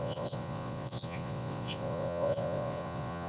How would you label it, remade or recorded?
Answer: remade